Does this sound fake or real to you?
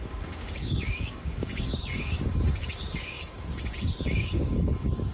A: fake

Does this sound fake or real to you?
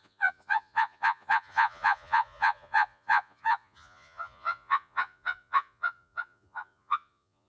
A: fake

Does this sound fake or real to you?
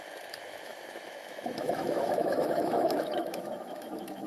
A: fake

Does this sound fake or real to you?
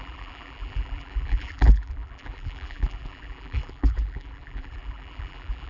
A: fake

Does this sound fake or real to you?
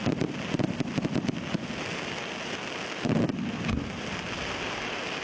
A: real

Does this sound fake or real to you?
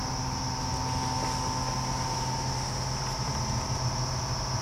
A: real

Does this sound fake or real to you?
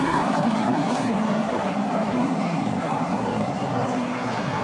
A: fake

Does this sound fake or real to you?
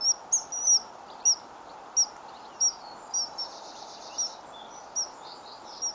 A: real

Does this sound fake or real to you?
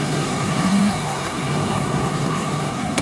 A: fake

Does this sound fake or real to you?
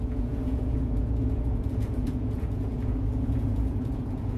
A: fake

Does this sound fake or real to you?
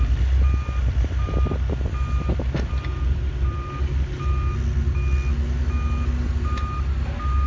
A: real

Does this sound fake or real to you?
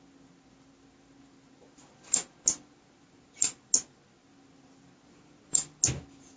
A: real